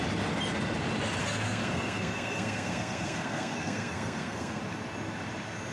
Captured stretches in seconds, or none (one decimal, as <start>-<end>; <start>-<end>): 0.0-1.2; 4.6-5.7